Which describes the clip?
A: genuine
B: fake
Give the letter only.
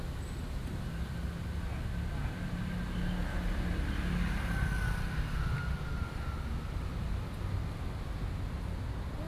A